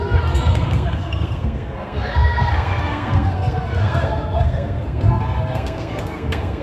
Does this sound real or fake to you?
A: fake